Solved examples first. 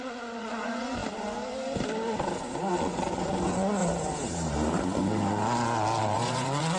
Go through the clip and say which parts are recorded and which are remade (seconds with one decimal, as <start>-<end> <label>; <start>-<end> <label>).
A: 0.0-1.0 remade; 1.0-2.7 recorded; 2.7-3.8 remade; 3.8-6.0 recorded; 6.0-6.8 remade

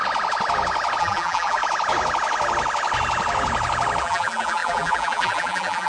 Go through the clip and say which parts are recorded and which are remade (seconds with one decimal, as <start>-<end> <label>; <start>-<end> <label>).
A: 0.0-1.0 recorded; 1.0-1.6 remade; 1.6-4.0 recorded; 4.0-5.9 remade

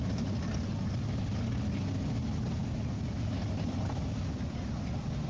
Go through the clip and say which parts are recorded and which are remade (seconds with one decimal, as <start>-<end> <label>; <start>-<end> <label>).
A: 0.0-5.3 recorded

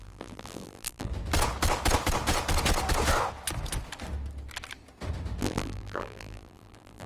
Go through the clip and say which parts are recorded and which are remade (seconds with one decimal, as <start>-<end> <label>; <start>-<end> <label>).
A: 0.0-1.1 remade; 1.1-5.4 recorded; 5.4-7.1 remade